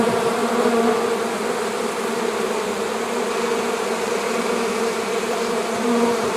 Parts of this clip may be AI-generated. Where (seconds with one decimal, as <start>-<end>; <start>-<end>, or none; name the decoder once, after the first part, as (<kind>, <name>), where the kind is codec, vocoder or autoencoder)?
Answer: 0.0-0.4 (vocoder, BigVGAN v2); 3.3-6.4